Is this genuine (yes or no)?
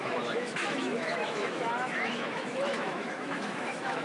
no